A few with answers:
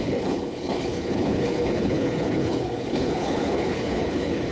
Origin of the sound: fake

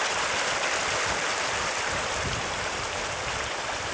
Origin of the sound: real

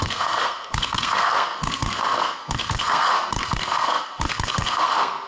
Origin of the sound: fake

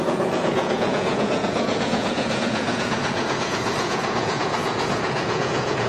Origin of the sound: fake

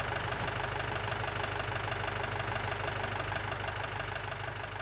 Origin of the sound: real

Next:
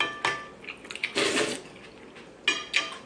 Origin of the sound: real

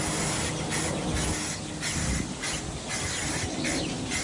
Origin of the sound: real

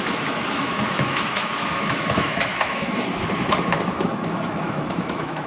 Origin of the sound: fake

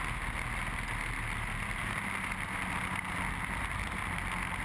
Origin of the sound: real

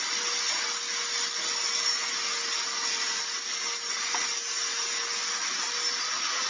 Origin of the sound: real